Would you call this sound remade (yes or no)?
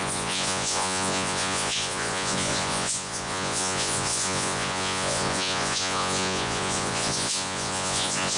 yes